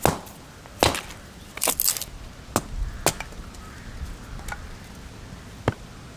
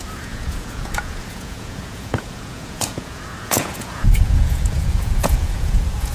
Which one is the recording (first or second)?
first